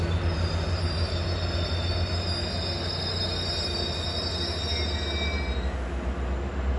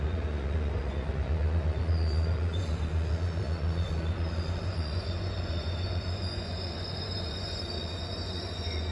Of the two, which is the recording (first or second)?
first